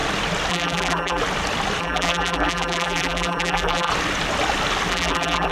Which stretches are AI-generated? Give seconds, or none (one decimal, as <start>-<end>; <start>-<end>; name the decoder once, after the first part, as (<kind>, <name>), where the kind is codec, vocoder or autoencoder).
0.5-1.2 (vocoder, BigVGAN v2); 1.8-3.9; 4.9-5.5